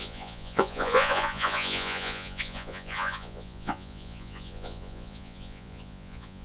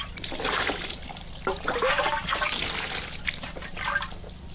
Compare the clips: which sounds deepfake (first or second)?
first